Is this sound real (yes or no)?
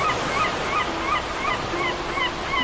yes